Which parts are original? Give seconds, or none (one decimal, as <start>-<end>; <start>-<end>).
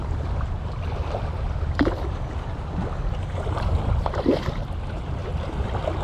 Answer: 0.0-0.7